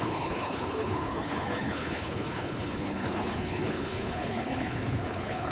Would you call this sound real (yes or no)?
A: no